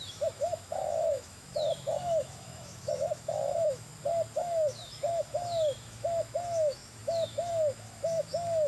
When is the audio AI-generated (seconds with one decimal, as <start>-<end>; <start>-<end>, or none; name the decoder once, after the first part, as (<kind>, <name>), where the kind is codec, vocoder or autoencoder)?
0.0-3.9 (autoencoder, DAC-VAE); 4.4-8.7